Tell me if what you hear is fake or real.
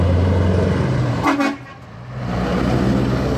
real